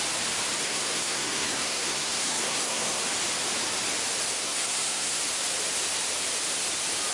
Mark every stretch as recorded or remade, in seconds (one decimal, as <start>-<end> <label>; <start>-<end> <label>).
0.0-0.6 recorded; 0.6-3.0 remade; 3.0-4.4 recorded; 4.4-5.2 remade; 5.2-7.1 recorded

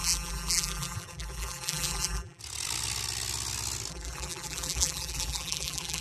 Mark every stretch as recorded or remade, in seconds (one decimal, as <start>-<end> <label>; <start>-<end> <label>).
0.0-2.4 remade; 2.4-3.9 recorded; 3.9-6.0 remade

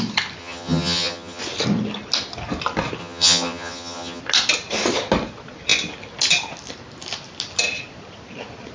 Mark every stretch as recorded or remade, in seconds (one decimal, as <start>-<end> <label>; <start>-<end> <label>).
0.0-0.4 recorded; 0.4-1.4 remade; 1.4-3.0 recorded; 3.0-4.2 remade; 4.2-8.7 recorded

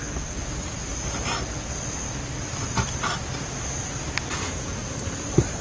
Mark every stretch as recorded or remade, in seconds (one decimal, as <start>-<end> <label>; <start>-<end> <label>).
0.0-5.6 recorded

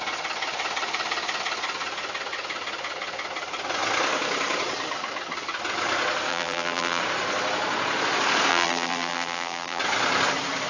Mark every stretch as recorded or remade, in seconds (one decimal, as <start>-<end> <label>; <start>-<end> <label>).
0.0-6.3 recorded; 6.3-7.0 remade; 7.0-8.5 recorded; 8.5-9.8 remade; 9.8-10.7 recorded

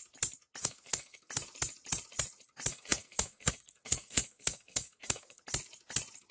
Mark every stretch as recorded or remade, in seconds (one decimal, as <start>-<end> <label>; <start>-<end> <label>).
0.0-0.6 recorded; 0.6-1.3 remade; 1.3-2.7 recorded; 2.7-5.4 remade; 5.4-6.3 recorded

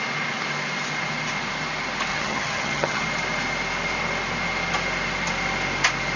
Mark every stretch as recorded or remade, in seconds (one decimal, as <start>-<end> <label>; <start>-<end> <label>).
0.0-2.1 recorded; 2.1-3.0 remade; 3.0-6.2 recorded